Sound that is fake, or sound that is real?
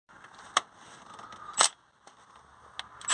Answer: real